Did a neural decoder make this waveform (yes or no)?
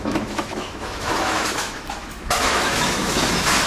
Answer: yes